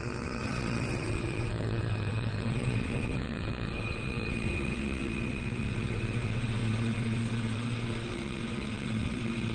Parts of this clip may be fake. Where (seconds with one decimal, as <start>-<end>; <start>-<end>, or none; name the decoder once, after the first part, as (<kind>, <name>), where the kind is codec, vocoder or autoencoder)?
0.0-9.5 (vocoder, WaveNeXt)